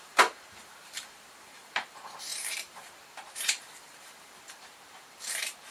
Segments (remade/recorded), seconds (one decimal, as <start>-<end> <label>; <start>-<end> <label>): 0.0-5.7 remade